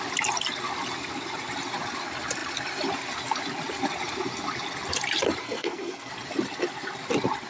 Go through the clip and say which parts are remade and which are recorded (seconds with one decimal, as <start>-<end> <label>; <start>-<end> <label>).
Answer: 0.0-5.4 recorded; 5.4-6.1 remade; 6.1-7.5 recorded